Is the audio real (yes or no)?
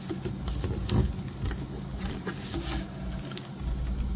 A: yes